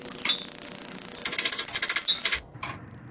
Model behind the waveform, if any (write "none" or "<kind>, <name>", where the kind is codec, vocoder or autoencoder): none